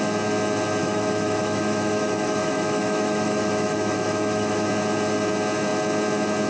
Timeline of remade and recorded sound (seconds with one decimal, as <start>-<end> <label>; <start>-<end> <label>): 0.0-0.8 recorded; 0.8-4.7 remade; 4.7-6.5 recorded